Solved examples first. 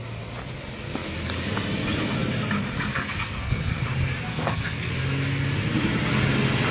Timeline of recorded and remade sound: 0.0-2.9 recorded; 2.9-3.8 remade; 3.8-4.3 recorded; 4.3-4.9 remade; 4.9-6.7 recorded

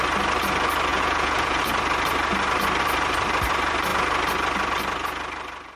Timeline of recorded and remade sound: 0.0-0.9 recorded; 0.9-1.6 remade; 1.6-5.8 recorded

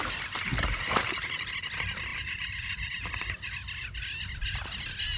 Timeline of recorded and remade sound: 0.0-0.5 recorded; 0.5-1.5 remade; 1.5-2.1 recorded; 2.1-3.1 remade; 3.1-5.2 recorded